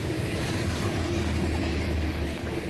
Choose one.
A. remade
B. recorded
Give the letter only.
A